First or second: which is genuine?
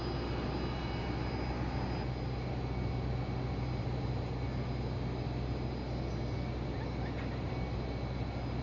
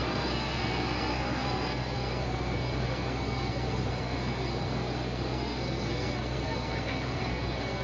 first